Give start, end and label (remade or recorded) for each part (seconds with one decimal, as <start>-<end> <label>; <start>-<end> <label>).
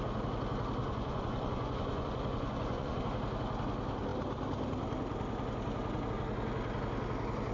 0.0-0.8 recorded; 0.8-3.0 remade; 3.0-7.5 recorded